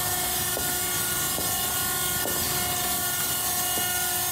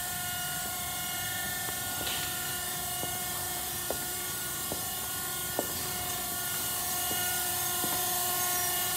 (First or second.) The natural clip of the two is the first